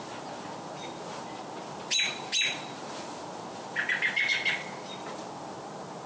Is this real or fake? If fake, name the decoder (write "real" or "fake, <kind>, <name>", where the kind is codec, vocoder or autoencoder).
real